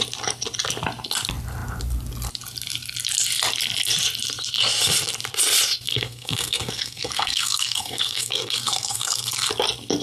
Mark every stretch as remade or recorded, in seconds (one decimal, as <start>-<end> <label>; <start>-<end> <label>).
0.0-5.9 recorded; 5.9-9.5 remade; 9.5-10.0 recorded